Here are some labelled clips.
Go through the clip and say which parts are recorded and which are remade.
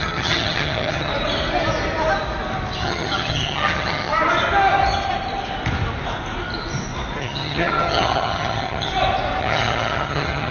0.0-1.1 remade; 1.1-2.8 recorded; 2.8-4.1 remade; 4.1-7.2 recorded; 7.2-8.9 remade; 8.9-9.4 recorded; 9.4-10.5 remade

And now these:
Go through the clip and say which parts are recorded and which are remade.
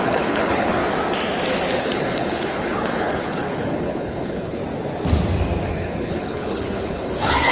0.0-0.8 remade; 0.8-1.8 recorded; 1.8-4.6 remade; 4.6-5.7 recorded; 5.7-7.5 remade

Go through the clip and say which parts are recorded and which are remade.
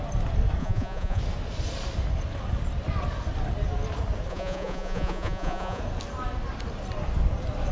0.0-0.6 recorded; 0.6-1.2 remade; 1.2-4.3 recorded; 4.3-5.8 remade; 5.8-7.7 recorded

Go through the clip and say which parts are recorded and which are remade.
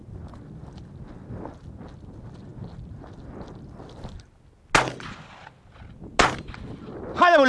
0.0-7.5 recorded